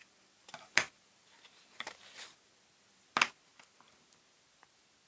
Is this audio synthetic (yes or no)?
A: no